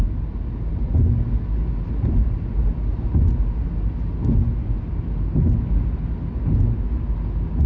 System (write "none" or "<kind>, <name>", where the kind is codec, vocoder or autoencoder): none